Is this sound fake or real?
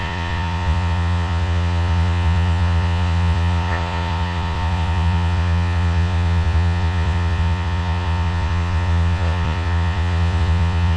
fake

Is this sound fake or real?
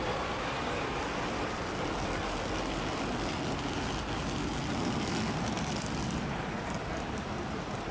real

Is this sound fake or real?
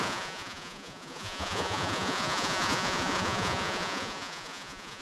fake